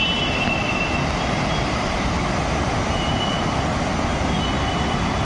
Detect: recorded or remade recorded